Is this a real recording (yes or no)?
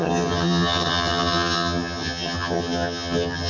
no